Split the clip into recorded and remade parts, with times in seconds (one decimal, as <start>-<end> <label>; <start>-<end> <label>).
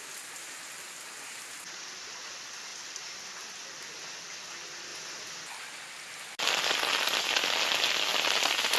0.0-2.7 recorded; 2.7-3.8 remade; 3.8-8.1 recorded; 8.1-8.8 remade